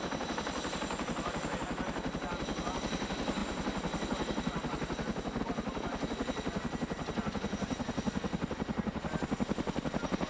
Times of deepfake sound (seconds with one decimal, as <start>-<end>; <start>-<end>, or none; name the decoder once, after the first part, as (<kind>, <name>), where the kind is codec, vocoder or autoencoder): none